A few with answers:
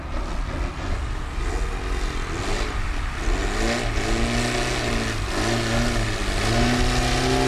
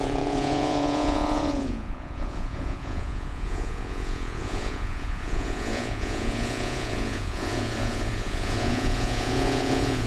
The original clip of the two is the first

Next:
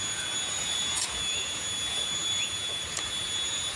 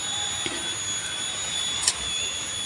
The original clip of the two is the second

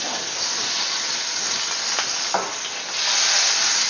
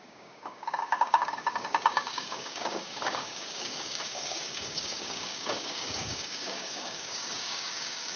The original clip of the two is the first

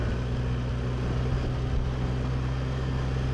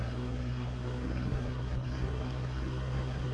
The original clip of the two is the first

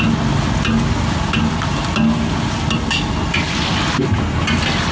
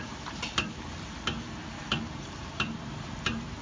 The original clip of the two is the first